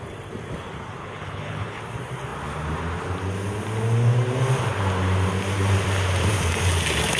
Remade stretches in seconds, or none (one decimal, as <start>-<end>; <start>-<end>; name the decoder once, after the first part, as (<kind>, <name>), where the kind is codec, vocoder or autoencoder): 1.0-1.8 (codec, HILCodec)

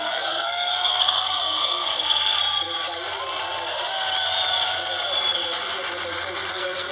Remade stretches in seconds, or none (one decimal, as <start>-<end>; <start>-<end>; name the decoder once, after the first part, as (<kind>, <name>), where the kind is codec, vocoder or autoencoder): 0.0-2.4 (codec, SNAC); 6.5-6.9

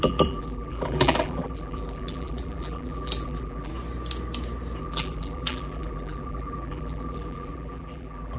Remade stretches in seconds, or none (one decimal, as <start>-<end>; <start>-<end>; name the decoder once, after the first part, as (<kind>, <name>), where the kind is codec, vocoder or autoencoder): 0.0-3.7 (vocoder, BigVGAN v2); 4.8-8.4

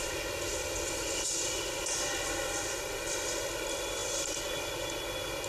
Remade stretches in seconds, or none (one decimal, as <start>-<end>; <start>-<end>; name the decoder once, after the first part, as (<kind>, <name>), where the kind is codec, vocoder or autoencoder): none

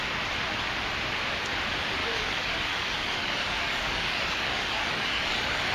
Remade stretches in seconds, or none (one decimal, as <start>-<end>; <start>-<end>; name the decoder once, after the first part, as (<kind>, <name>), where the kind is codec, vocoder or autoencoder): 2.0-5.7 (codec, DAC)

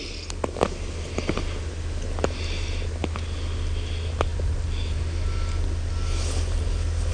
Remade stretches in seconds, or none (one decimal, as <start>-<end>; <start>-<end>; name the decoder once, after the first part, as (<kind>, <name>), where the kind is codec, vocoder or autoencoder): none

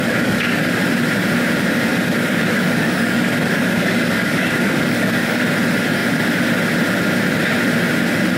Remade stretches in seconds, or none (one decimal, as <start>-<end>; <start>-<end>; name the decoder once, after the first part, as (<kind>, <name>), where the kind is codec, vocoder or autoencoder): 0.0-0.7 (codec, DAC); 1.9-5.4

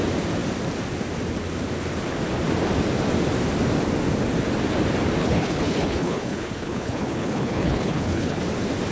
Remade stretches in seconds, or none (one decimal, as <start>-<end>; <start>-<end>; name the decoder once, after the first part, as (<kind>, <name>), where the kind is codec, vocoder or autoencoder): 5.2-8.4 (codec, HILCodec)